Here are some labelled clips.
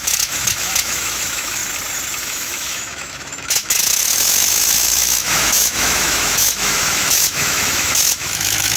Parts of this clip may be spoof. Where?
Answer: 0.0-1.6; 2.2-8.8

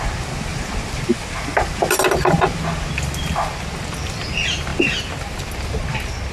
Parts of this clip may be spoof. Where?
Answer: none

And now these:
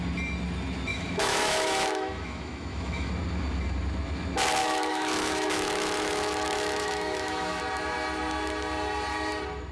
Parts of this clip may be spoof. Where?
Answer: 0.9-3.1; 4.6-7.6

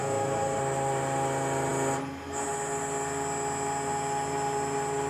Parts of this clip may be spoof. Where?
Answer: 0.0-0.6

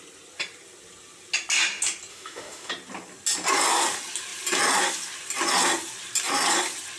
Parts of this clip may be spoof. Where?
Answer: 2.1-2.7